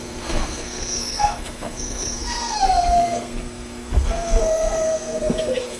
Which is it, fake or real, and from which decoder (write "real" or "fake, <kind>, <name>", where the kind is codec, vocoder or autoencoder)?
fake, codec, SNAC